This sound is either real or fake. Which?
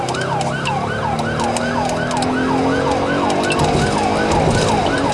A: real